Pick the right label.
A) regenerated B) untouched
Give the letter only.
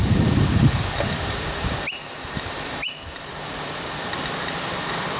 B